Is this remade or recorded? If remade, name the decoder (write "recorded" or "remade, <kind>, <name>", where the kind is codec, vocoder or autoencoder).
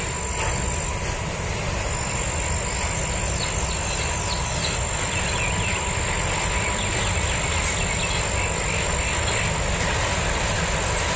recorded